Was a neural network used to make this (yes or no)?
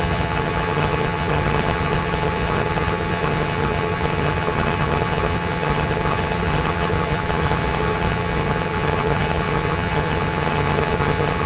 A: yes